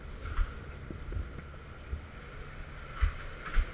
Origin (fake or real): real